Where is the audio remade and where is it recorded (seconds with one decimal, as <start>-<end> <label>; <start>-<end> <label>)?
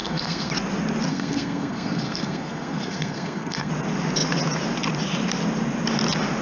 0.0-0.5 remade; 0.5-1.1 recorded; 1.1-3.7 remade; 3.7-6.4 recorded